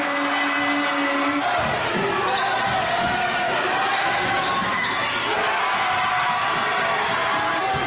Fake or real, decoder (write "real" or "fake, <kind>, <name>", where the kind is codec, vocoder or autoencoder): real